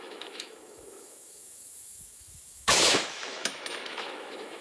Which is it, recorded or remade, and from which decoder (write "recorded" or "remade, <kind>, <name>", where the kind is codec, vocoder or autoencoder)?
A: remade, autoencoder, DAC-VAE